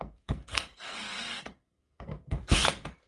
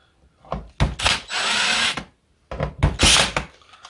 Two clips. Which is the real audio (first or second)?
second